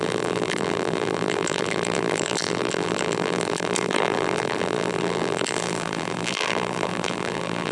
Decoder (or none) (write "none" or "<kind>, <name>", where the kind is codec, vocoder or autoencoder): vocoder, BigVGAN v2